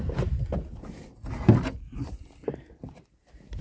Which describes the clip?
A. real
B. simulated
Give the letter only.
A